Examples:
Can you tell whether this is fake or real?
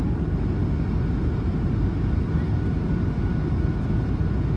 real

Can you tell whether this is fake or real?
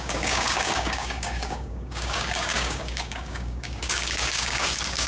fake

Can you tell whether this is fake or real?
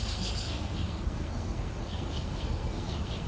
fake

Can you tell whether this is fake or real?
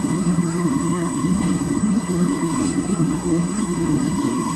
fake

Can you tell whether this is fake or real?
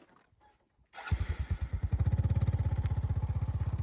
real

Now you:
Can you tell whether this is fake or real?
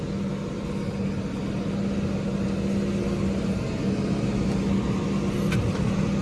real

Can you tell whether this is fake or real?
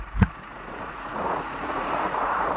fake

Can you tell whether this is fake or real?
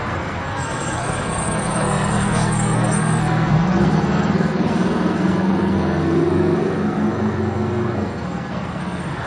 fake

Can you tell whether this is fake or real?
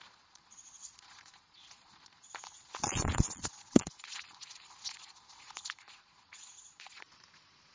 fake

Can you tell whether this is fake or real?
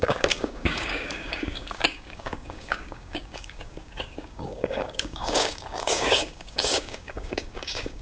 fake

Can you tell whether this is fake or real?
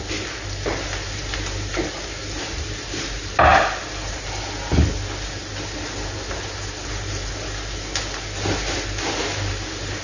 real